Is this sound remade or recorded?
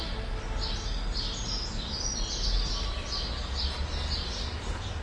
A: recorded